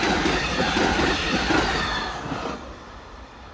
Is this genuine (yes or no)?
yes